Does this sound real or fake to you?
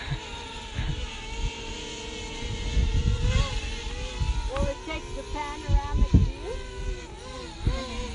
real